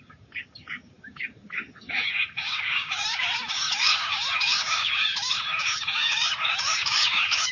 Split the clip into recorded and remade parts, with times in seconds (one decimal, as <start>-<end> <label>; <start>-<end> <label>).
0.0-7.5 remade